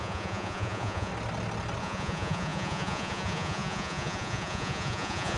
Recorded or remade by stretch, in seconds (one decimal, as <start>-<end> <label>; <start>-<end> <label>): 0.0-1.1 remade; 1.1-1.8 recorded; 1.8-5.4 remade